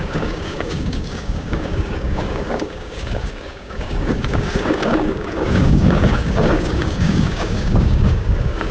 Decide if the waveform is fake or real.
fake